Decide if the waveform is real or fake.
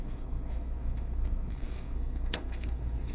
fake